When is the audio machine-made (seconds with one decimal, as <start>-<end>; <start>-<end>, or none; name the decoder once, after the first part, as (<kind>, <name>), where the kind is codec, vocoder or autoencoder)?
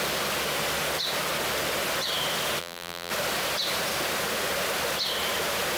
2.6-3.1 (vocoder, BigVGAN v2)